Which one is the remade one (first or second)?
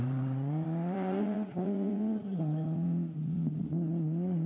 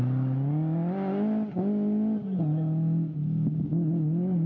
first